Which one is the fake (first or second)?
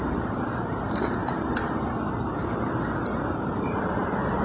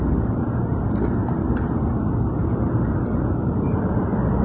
first